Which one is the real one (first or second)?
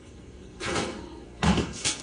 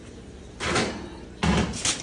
second